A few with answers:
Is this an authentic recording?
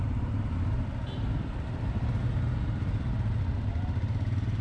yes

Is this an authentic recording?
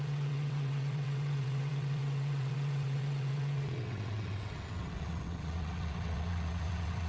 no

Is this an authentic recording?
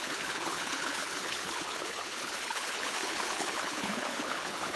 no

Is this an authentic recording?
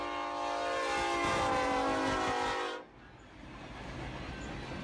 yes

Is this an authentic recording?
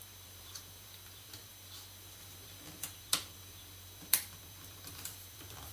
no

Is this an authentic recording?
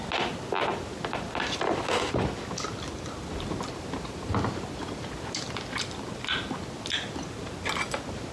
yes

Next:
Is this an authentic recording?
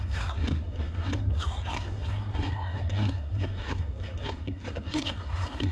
no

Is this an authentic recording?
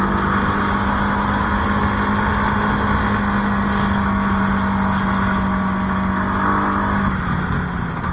yes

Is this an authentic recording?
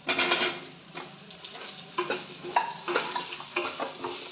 yes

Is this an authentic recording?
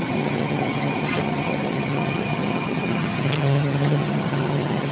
no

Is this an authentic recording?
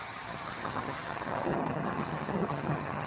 no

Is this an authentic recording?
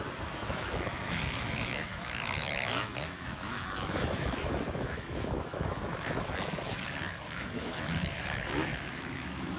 no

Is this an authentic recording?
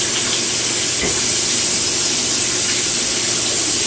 yes